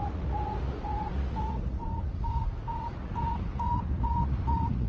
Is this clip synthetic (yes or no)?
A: yes